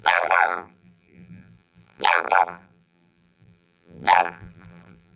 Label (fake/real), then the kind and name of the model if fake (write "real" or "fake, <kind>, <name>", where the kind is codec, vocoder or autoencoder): fake, vocoder, BigVGAN v2